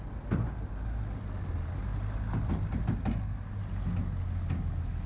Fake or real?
real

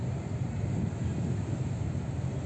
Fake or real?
real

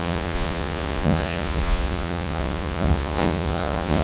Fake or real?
fake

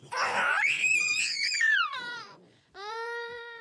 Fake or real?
fake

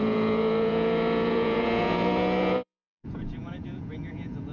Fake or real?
fake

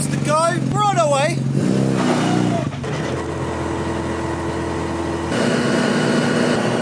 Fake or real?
real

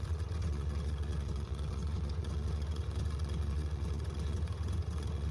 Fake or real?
fake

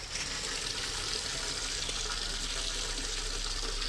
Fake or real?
real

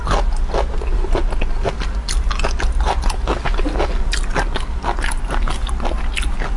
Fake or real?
real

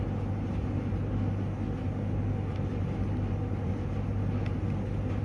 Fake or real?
real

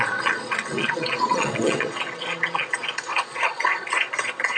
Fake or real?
fake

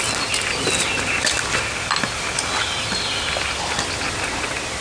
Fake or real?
real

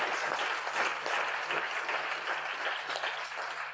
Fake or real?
real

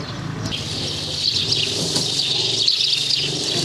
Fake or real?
real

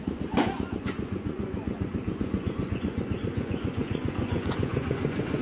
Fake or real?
fake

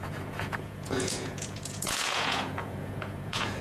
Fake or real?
fake